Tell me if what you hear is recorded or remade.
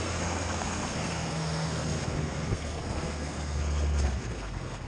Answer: remade